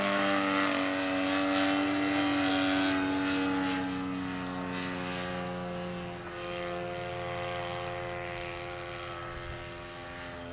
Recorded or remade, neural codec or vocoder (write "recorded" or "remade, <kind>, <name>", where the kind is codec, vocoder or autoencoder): recorded